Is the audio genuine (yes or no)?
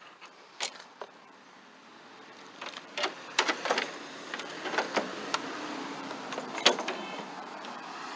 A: no